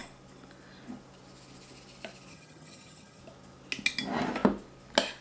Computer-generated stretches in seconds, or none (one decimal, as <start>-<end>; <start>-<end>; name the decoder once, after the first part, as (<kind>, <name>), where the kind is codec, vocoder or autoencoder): 2.3-3.2 (vocoder, HiFi-GAN)